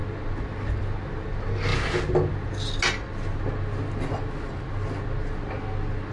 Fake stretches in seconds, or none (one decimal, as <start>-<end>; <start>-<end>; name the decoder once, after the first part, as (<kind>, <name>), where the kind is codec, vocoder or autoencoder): none

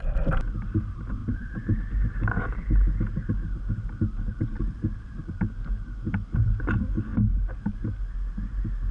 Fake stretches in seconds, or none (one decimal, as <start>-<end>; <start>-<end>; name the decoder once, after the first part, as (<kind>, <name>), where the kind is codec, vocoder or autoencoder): 1.2-3.0 (vocoder, BigVGAN v2); 4.3-5.3

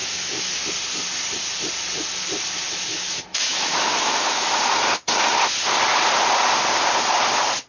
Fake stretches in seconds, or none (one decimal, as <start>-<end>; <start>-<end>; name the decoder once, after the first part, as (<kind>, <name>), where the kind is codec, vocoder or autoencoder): 0.0-0.6 (autoencoder, DAC-VAE); 2.9-4.5

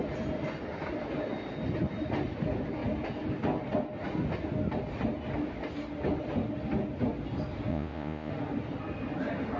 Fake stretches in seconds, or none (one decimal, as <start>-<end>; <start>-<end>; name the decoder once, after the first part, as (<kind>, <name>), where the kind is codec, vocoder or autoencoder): 7.7-8.3 (vocoder, Vocos)

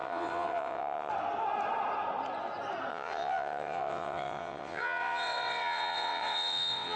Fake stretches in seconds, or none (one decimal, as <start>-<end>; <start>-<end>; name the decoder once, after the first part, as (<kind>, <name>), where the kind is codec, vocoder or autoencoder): 0.0-1.1 (vocoder, WaveNeXt); 2.9-7.0

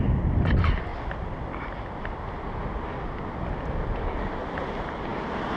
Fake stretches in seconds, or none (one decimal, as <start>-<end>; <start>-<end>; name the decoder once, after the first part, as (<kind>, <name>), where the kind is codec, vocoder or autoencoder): none